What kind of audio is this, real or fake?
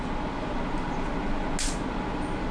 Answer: real